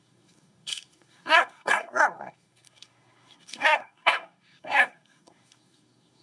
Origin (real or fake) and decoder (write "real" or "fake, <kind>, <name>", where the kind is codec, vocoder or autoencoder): fake, codec, SNAC